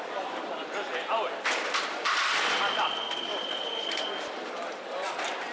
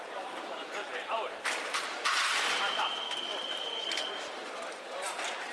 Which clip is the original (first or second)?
first